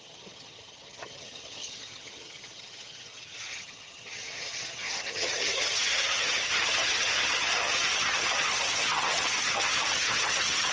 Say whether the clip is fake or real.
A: fake